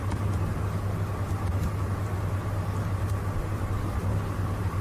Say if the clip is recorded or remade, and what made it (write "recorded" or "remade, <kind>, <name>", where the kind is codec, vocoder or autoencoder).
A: recorded